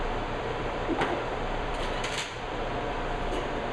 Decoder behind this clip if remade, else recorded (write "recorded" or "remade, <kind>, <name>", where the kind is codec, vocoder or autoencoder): remade, vocoder, BigVGAN v2